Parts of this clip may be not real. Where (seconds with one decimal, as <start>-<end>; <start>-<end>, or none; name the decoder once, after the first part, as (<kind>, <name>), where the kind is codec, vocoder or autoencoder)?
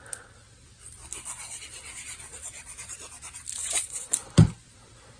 3.6-4.1 (vocoder, WaveNeXt)